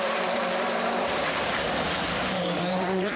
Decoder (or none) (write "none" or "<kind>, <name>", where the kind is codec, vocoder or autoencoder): vocoder, BigVGAN v2